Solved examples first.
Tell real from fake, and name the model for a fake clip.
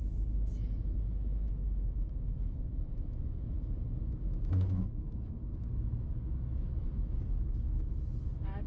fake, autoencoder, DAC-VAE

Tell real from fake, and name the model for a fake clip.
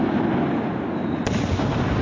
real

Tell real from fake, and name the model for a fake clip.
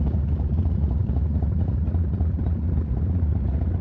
fake, vocoder, Vocos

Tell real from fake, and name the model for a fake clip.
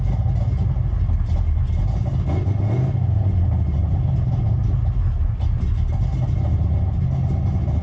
real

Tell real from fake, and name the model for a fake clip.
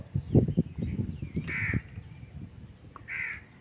real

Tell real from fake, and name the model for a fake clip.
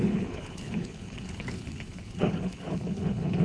fake, codec, HILCodec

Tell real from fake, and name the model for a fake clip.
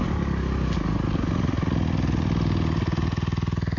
real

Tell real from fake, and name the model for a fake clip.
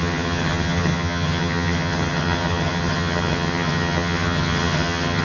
fake, vocoder, HiFi-GAN